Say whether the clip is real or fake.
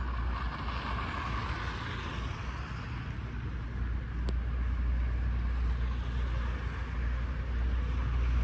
real